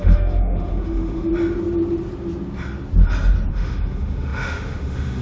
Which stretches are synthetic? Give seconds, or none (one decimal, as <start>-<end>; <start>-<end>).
0.0-1.3; 3.5-5.2